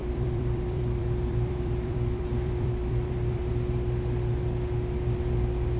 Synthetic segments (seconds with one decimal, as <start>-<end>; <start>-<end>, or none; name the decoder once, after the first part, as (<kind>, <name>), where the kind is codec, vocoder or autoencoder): 0.0-3.5 (vocoder, BigVGAN v2)